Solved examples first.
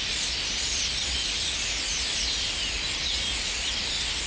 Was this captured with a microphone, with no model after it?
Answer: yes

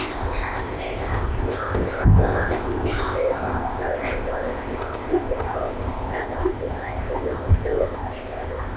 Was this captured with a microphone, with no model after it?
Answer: no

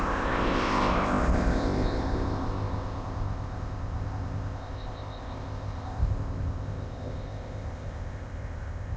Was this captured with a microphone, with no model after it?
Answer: no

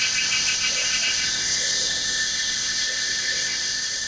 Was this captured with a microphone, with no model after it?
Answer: no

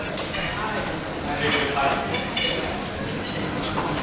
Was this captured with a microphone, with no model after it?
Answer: yes